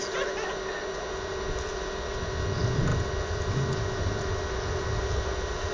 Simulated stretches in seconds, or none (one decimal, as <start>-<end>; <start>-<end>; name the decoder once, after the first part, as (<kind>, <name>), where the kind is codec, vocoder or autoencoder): none